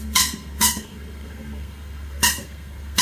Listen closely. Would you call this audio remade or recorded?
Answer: remade